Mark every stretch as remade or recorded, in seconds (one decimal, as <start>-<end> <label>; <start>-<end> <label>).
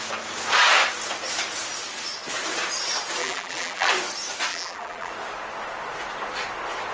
0.0-3.2 recorded; 3.2-3.9 remade; 3.9-4.5 recorded; 4.5-5.1 remade; 5.1-6.9 recorded